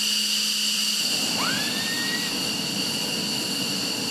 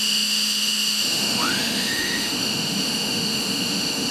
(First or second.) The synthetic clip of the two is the second